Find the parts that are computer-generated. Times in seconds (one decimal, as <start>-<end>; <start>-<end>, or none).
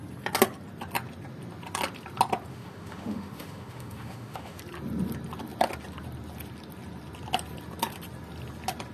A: 2.5-4.6